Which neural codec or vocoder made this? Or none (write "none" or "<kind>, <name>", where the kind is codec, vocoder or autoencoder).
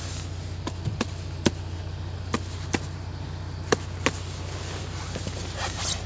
none